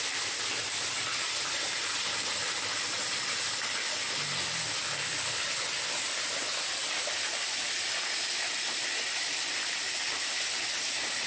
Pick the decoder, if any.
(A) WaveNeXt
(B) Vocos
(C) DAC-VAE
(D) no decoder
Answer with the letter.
D